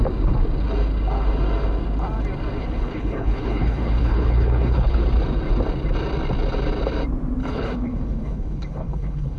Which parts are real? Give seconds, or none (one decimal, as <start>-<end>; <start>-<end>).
0.0-2.6; 5.0-7.4